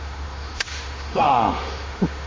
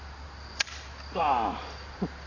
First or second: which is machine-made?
first